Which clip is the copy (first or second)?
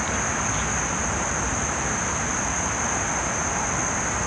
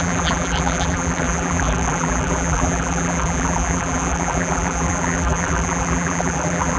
second